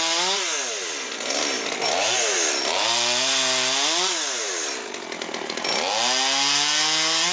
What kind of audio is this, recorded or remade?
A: recorded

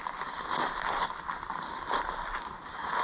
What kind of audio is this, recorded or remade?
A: recorded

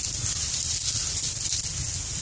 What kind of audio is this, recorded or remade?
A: recorded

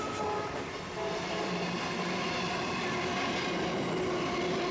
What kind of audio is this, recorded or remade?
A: recorded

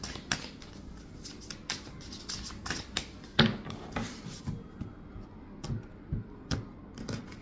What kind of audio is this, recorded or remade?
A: recorded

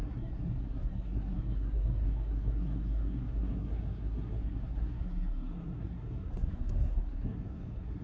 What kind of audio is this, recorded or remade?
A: remade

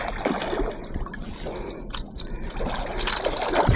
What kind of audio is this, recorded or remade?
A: remade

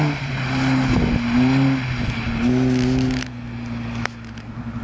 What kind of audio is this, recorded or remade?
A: recorded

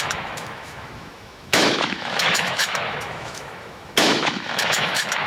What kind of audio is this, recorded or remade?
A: remade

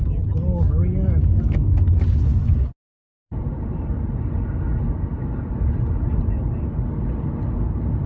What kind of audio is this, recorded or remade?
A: recorded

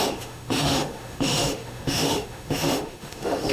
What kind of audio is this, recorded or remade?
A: remade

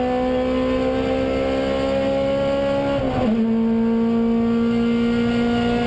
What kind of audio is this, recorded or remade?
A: recorded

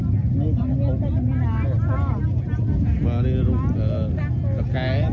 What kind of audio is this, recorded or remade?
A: recorded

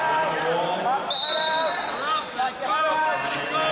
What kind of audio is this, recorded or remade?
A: recorded